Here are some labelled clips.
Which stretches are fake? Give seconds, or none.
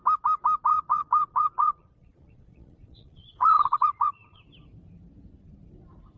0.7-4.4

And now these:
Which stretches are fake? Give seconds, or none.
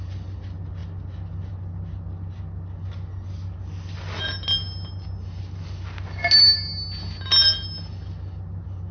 none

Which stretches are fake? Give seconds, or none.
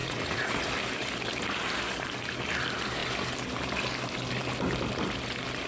0.0-0.7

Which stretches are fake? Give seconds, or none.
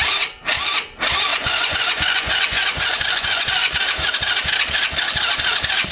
1.3-3.7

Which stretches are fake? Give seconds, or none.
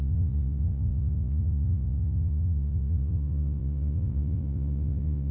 0.0-5.3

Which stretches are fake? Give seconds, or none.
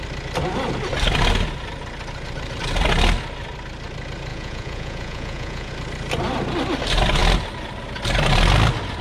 4.3-5.7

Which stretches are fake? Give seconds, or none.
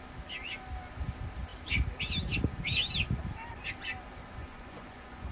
4.4-5.3